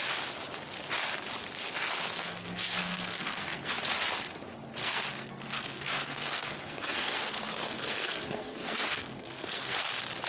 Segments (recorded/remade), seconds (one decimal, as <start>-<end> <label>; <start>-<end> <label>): 0.0-1.8 recorded; 1.8-3.7 remade; 3.7-4.8 recorded; 4.8-9.9 remade; 9.9-10.3 recorded